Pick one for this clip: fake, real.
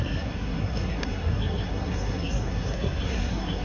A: fake